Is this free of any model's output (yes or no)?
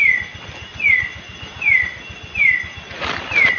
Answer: yes